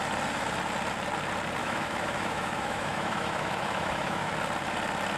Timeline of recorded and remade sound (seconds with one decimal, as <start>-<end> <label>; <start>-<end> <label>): 0.0-1.6 recorded; 1.6-4.3 remade; 4.3-5.2 recorded